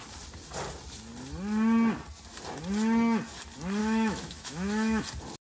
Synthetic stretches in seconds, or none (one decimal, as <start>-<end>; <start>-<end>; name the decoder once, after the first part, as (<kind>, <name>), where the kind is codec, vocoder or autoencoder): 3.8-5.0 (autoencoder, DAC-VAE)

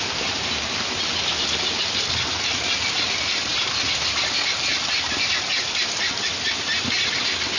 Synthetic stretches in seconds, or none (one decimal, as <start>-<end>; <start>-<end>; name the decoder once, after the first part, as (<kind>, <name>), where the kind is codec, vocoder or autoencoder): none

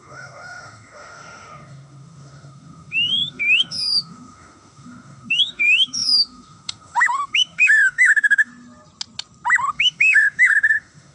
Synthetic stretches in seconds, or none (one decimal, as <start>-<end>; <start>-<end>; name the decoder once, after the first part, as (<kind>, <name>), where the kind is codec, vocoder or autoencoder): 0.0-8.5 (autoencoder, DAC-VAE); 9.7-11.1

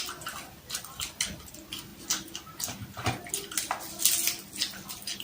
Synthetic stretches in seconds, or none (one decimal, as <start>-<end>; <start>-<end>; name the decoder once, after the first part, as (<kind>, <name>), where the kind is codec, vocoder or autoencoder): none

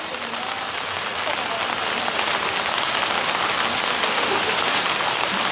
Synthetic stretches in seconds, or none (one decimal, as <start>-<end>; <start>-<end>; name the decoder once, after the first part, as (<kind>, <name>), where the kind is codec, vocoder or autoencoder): 4.1-4.8 (autoencoder, DAC-VAE)

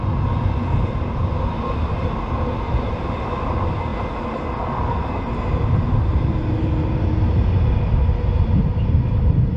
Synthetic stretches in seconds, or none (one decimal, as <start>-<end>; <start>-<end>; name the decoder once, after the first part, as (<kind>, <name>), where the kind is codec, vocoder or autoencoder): none